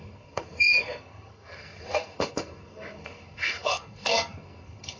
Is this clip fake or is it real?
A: fake